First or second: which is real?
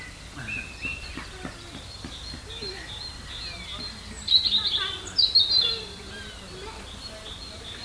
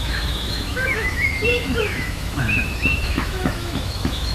first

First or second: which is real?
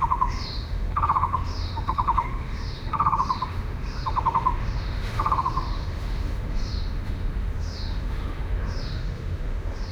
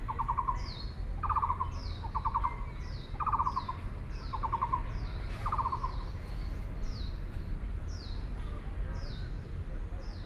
second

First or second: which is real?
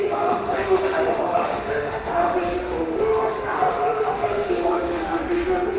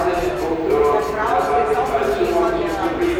second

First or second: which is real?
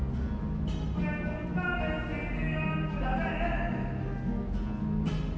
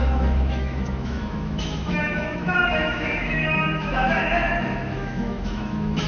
first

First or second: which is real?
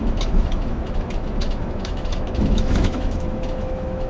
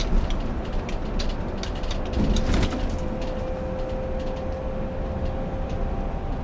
second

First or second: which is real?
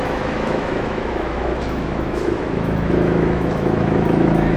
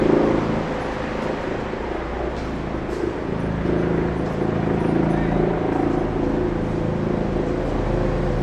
second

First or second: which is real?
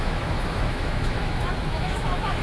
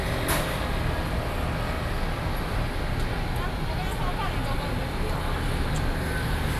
second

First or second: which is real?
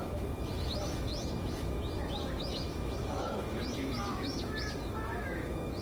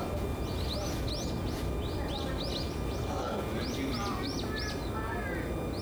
second